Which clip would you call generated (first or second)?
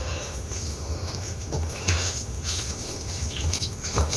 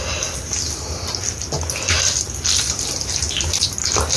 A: first